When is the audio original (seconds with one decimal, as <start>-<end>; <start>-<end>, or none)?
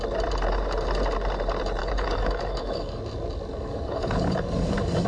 0.0-1.8; 3.0-3.5